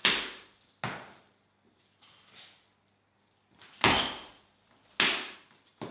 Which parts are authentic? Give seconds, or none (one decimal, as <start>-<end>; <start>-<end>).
0.6-5.9